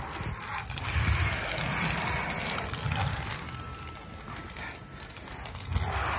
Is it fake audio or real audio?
real